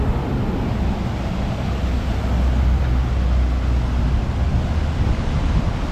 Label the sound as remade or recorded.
recorded